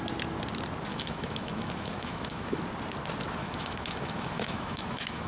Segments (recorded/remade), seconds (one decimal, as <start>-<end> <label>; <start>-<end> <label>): 0.0-0.9 recorded; 0.9-2.6 remade; 2.6-3.4 recorded; 3.4-5.3 remade